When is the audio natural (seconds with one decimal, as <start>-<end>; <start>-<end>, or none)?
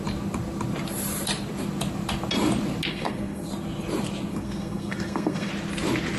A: 0.0-2.9; 3.5-4.3; 5.5-6.2